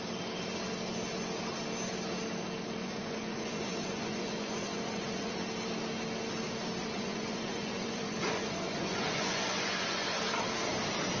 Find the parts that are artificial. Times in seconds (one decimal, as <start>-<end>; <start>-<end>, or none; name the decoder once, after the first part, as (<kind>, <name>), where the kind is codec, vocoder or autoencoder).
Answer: 2.8-5.3 (vocoder, Vocos); 6.8-10.2